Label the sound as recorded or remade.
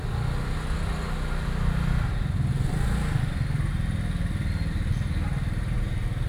recorded